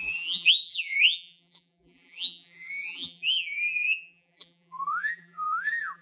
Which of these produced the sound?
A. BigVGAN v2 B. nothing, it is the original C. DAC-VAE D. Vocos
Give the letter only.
A